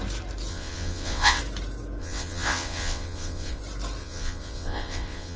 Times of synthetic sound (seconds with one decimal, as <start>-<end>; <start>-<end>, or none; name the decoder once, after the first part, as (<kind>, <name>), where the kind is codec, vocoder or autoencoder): 0.5-1.4 (vocoder, WaveNeXt); 2.0-3.6; 4.0-5.4